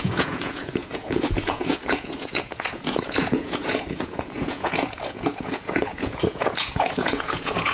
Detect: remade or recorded remade